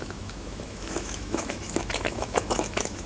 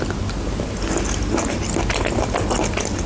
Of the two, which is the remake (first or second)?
first